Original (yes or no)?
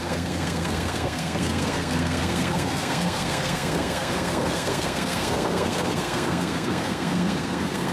no